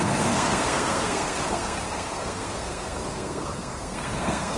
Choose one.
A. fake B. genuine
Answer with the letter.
A